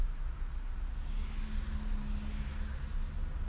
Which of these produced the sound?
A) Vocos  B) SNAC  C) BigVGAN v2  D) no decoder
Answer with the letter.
D